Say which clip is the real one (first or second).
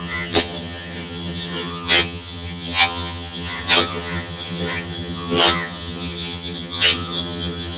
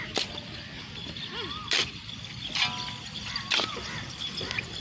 second